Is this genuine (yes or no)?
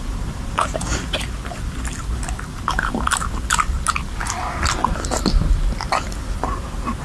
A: yes